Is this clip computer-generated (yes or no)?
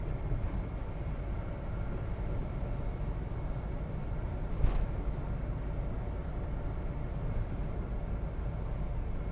no